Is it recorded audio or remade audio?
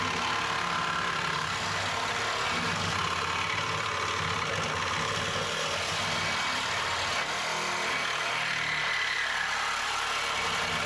recorded